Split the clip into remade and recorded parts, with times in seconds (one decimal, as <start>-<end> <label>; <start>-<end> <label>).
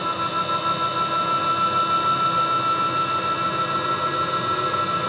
0.0-5.1 recorded